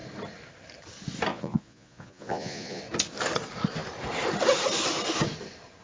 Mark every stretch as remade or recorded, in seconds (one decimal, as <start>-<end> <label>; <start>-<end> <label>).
0.0-1.3 recorded; 1.3-2.8 remade; 2.8-5.8 recorded